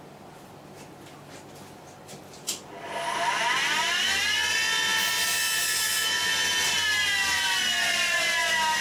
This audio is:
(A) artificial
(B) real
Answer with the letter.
B